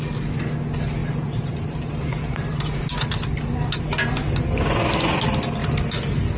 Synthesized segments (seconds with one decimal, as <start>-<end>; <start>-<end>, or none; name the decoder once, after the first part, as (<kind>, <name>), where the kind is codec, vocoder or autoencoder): 1.0-2.8 (vocoder, BigVGAN v2)